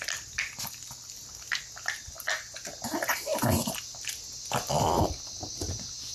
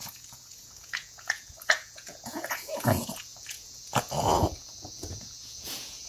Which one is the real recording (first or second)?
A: first